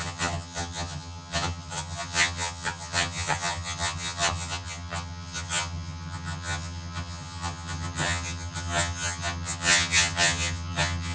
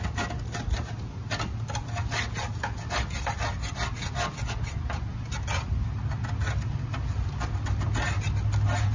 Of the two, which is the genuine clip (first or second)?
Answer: second